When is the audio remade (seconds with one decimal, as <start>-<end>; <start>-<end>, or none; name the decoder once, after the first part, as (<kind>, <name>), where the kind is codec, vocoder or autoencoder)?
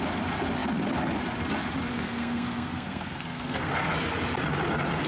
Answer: 1.9-3.7 (codec, SNAC)